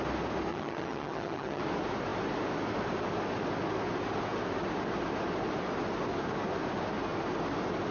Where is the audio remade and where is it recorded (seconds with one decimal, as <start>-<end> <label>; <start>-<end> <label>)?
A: 0.0-0.5 recorded; 0.5-1.6 remade; 1.6-7.9 recorded